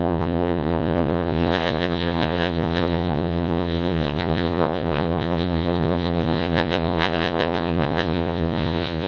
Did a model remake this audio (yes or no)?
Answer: yes